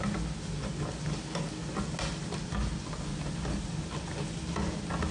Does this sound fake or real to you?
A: real